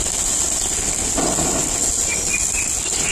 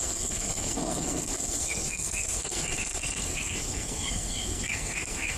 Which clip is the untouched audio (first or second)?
first